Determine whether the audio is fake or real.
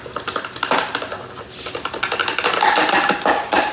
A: real